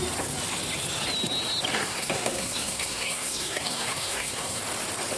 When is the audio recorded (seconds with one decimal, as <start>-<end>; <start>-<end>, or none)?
0.0-1.7; 4.6-5.2